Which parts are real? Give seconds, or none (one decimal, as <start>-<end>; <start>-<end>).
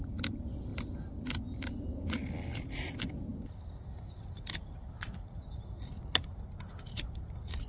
0.0-7.7